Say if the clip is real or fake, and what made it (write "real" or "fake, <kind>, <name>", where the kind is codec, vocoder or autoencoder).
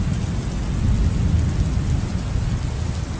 real